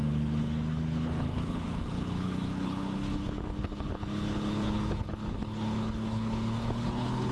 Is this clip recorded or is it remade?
remade